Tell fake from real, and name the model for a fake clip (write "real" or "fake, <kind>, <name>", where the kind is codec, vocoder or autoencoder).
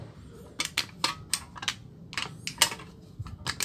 real